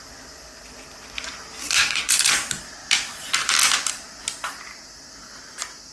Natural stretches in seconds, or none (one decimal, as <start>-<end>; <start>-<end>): 0.0-1.6; 2.1-5.9